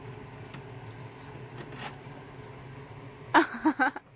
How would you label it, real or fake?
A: real